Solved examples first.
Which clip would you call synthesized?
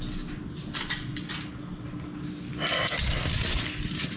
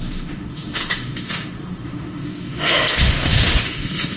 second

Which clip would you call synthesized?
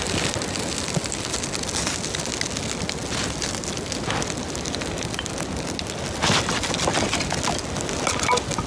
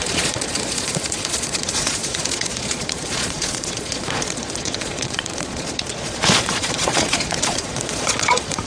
second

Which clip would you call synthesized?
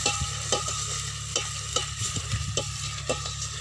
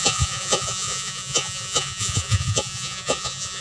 second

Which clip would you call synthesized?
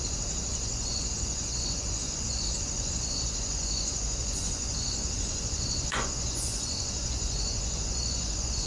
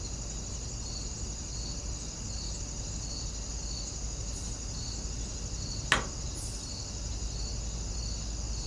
first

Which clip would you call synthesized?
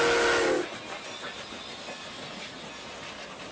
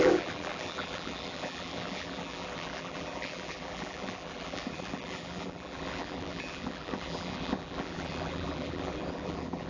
second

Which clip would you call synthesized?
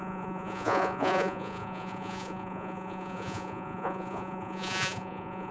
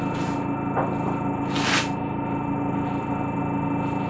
first